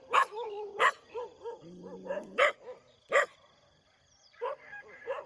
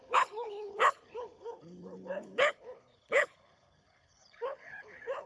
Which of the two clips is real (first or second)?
first